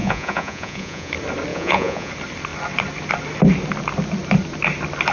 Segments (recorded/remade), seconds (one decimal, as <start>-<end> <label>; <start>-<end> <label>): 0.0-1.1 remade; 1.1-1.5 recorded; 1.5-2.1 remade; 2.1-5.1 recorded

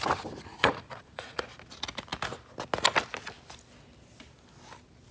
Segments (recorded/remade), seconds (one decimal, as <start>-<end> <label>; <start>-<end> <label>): 0.0-0.5 recorded; 0.5-1.4 remade; 1.4-5.1 recorded

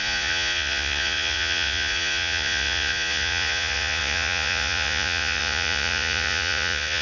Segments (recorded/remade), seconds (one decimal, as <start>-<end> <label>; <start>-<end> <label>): 0.0-7.0 remade

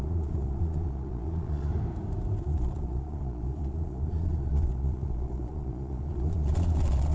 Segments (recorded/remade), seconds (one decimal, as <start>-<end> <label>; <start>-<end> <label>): 0.0-1.7 remade; 1.7-2.4 recorded; 2.4-7.1 remade